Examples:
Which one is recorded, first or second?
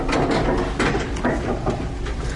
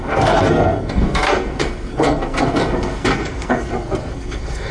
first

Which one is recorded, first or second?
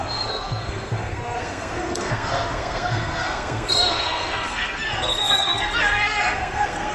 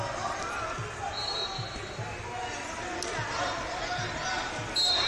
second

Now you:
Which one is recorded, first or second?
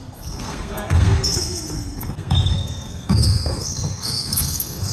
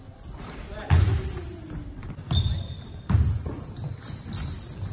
second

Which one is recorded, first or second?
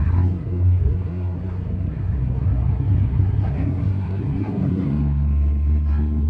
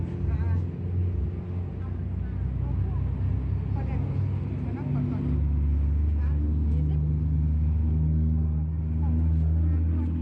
second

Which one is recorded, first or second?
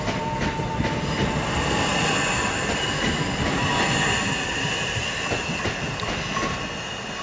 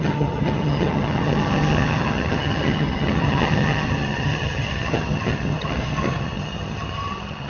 first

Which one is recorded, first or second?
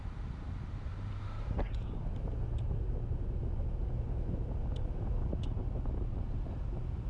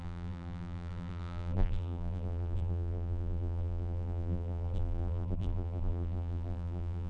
first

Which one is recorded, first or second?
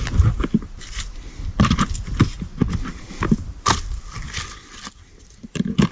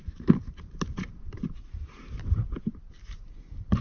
first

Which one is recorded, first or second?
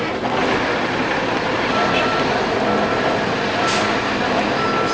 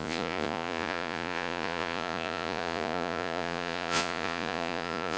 first